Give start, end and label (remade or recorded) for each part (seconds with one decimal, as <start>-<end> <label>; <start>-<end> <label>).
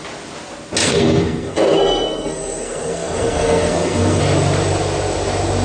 0.0-0.8 recorded; 0.8-4.2 remade; 4.2-5.6 recorded